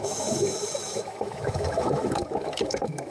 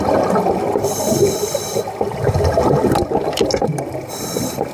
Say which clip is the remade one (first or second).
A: first